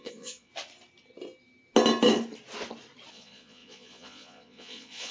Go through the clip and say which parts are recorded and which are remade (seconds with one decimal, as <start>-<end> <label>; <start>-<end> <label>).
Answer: 0.0-0.5 remade; 0.5-3.1 recorded; 3.1-5.1 remade